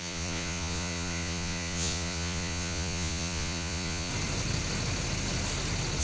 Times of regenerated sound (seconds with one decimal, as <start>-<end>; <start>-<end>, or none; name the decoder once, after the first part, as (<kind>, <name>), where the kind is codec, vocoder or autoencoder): 0.0-4.1 (vocoder, Vocos)